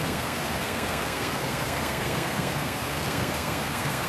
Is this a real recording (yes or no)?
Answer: no